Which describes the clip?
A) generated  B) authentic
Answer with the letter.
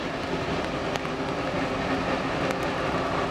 B